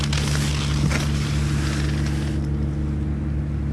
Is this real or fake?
real